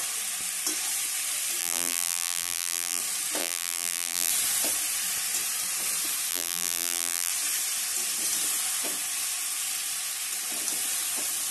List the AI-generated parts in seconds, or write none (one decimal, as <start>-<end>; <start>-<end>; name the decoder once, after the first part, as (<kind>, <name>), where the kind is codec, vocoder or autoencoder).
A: 1.6-3.0 (vocoder, BigVGAN v2); 3.4-4.3; 6.3-7.3